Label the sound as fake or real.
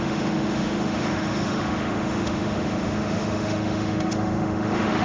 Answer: fake